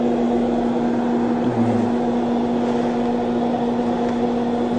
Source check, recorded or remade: recorded